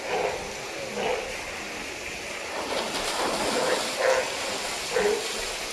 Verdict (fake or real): real